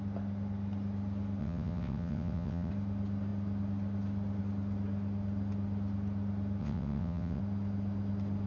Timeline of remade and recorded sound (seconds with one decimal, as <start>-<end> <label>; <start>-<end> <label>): 0.0-1.4 recorded; 1.4-2.7 remade; 2.7-6.6 recorded; 6.6-7.4 remade; 7.4-8.5 recorded